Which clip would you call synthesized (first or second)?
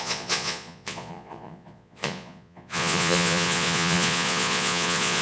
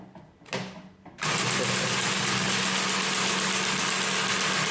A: first